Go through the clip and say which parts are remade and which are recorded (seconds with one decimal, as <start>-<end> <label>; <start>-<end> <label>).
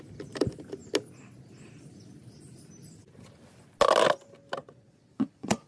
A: 0.0-4.6 recorded; 4.6-5.7 remade